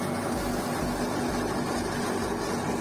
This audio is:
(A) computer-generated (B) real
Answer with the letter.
B